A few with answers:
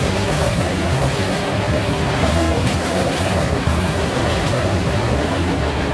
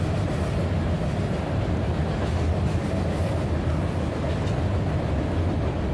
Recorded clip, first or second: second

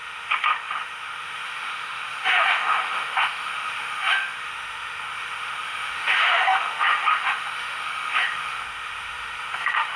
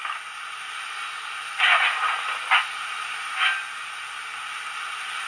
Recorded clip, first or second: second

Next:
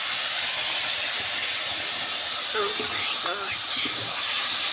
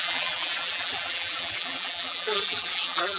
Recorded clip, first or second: first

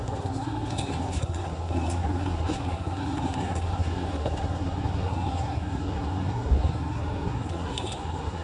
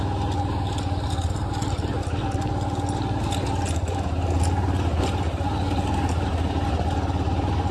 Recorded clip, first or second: second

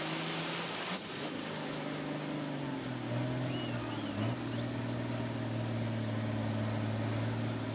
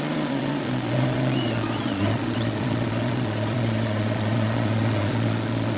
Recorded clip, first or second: first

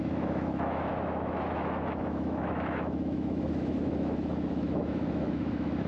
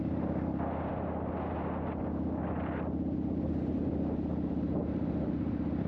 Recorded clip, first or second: second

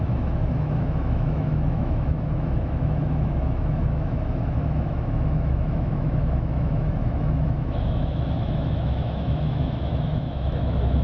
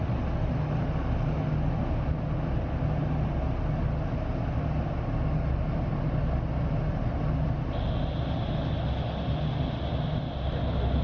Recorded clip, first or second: second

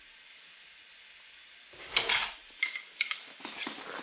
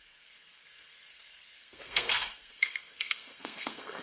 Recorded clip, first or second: first